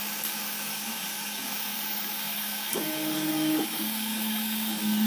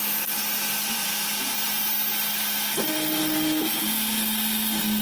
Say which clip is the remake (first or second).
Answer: first